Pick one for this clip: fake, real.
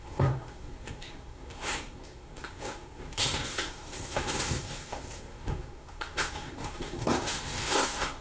fake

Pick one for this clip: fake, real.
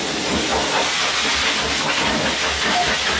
real